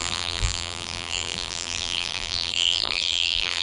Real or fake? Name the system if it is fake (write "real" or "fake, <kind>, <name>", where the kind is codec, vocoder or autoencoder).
fake, vocoder, BigVGAN v2